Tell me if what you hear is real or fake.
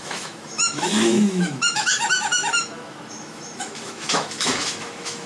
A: fake